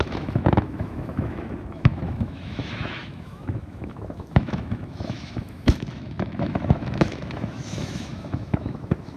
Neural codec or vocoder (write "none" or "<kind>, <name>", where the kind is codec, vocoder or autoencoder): autoencoder, DAC-VAE